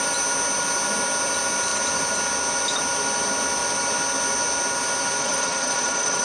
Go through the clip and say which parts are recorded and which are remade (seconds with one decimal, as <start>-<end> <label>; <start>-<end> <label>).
0.0-5.2 recorded; 5.2-6.2 remade